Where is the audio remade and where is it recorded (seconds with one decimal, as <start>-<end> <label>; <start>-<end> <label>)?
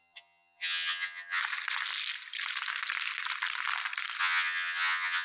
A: 0.0-1.4 remade; 1.4-4.2 recorded; 4.2-5.2 remade